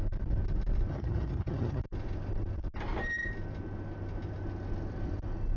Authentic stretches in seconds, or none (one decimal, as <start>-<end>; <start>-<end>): 0.0-0.9; 1.8-5.6